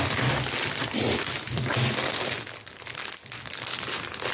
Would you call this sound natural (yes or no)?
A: yes